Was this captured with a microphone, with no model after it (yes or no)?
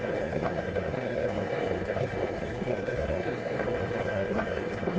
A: no